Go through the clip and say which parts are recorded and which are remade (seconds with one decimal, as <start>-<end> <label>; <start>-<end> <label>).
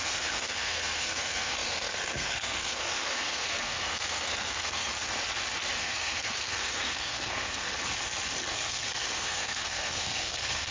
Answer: 0.0-4.9 remade; 4.9-5.8 recorded; 5.8-7.7 remade; 7.7-8.5 recorded; 8.5-10.7 remade